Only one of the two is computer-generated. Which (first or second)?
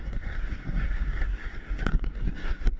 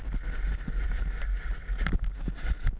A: first